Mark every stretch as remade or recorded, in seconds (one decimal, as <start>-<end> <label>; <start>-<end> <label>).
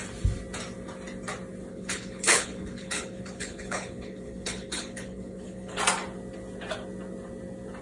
0.0-1.7 recorded; 1.7-5.8 remade; 5.8-7.8 recorded